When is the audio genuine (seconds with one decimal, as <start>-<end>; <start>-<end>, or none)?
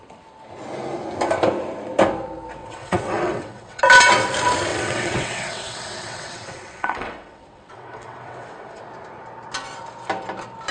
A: 0.0-2.6; 3.8-4.7; 8.8-10.7